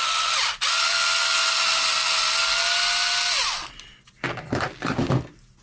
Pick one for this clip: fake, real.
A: real